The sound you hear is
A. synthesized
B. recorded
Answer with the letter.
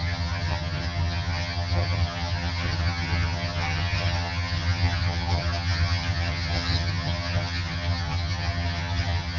A